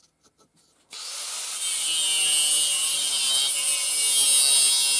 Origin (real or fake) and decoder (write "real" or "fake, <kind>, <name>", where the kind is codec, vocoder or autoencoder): real